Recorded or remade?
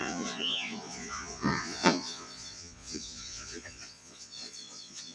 remade